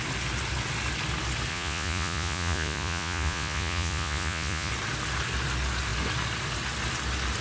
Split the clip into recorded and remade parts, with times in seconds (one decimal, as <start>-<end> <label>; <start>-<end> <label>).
0.0-1.5 recorded; 1.5-4.7 remade; 4.7-7.4 recorded